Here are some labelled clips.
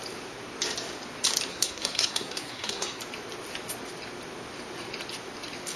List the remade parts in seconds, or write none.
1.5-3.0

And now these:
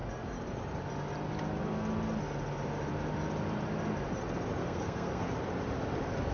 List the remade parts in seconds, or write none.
4.6-5.3

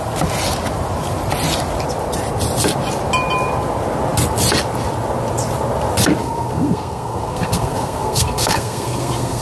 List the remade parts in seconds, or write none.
6.2-9.4